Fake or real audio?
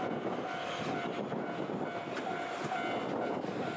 real